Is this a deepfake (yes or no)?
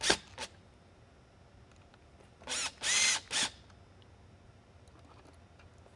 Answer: no